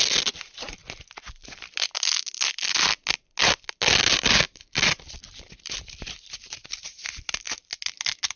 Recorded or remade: recorded